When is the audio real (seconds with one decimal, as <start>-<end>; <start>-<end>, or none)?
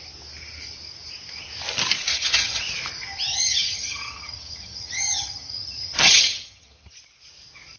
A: 0.0-2.1; 2.6-3.3; 6.9-7.8